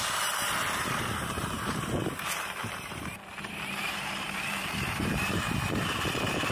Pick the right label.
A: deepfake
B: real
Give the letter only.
A